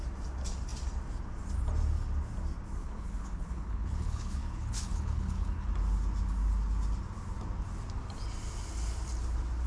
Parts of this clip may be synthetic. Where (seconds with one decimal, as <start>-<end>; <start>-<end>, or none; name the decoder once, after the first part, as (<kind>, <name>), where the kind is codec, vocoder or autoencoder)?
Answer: 2.8-5.7 (codec, HILCodec)